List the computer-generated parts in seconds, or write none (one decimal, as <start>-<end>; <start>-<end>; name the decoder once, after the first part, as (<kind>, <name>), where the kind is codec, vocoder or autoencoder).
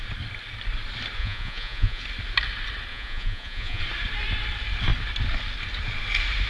1.2-2.0 (vocoder, Vocos); 2.9-3.8